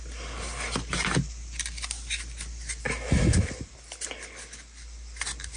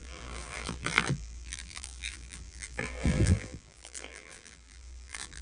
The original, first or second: first